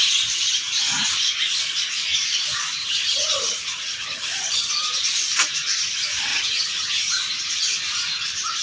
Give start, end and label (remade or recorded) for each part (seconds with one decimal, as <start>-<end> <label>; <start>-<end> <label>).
0.0-2.8 recorded; 2.8-4.7 remade; 4.7-6.3 recorded; 6.3-7.0 remade; 7.0-8.6 recorded